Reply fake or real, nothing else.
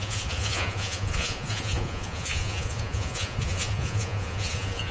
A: fake